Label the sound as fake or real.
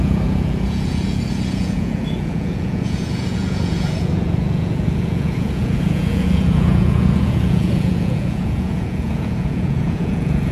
fake